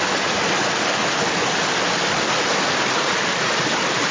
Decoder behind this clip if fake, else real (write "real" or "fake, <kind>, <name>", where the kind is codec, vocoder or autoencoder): real